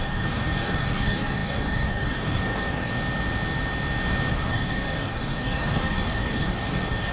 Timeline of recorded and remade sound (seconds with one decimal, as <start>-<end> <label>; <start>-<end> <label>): 0.0-2.9 remade; 2.9-4.3 recorded; 4.3-7.1 remade